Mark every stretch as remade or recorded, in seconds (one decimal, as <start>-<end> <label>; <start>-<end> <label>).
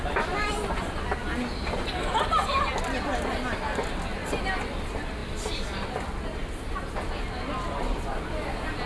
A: 0.0-8.9 recorded